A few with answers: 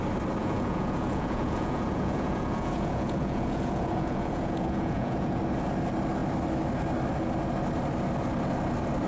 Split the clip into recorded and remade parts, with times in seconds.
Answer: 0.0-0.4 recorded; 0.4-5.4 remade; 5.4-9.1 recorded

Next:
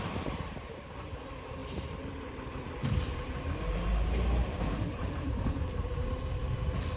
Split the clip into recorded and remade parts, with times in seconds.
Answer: 0.0-7.0 remade

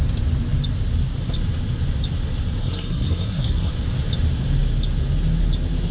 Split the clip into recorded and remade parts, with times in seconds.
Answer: 0.0-2.6 recorded; 2.6-3.7 remade; 3.7-5.9 recorded

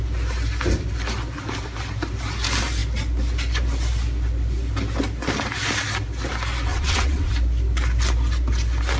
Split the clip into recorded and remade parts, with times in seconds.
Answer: 0.0-6.7 recorded; 6.7-7.3 remade; 7.3-9.0 recorded

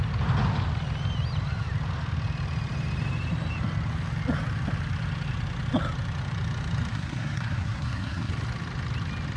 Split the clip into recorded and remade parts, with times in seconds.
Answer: 0.0-6.9 recorded; 6.9-8.3 remade; 8.3-9.4 recorded